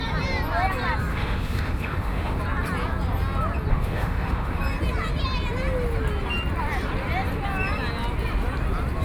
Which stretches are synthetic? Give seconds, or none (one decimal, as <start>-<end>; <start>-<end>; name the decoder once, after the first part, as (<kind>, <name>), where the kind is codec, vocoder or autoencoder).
1.1-2.4 (autoencoder, DAC-VAE); 3.7-4.6